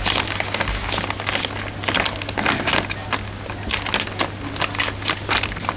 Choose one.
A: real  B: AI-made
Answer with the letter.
A